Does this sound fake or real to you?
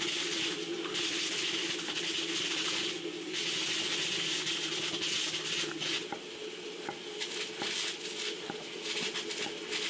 real